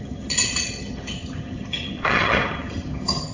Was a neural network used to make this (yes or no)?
yes